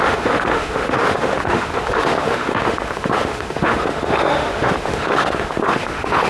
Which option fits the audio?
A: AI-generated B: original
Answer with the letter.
A